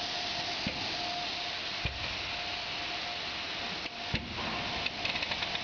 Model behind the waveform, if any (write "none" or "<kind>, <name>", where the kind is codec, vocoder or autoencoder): none